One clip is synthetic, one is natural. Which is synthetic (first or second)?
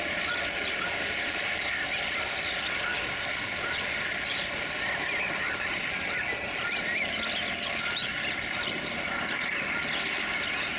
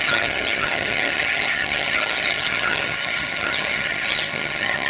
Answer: second